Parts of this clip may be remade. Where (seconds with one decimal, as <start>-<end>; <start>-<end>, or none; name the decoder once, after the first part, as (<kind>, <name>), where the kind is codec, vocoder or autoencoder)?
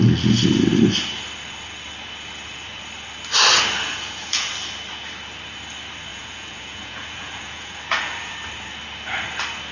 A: 3.9-4.5 (vocoder, Vocos); 6.1-8.3